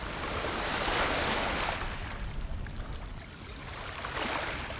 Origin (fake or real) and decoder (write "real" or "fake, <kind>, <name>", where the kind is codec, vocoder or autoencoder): real